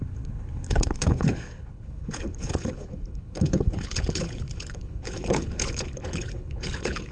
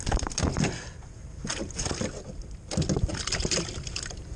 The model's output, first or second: first